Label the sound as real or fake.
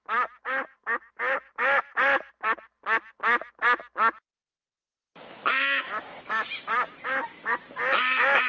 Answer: real